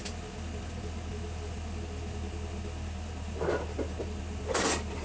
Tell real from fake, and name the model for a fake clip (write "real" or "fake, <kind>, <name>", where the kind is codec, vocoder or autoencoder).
real